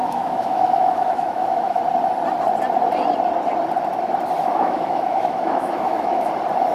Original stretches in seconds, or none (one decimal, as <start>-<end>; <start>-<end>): 1.8-4.4; 6.3-6.7